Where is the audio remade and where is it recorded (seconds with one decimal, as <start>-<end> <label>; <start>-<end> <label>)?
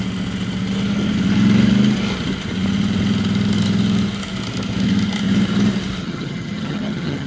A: 0.0-6.0 recorded; 6.0-7.3 remade